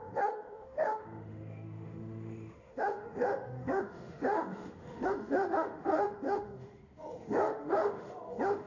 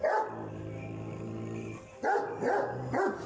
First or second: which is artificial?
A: first